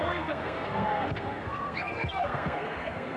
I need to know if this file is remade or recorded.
remade